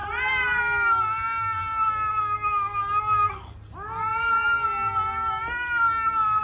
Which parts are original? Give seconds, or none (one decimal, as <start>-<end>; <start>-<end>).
0.6-6.4